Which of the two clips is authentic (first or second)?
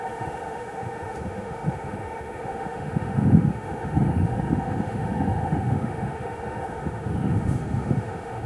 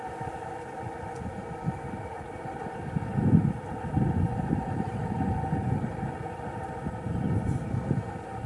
second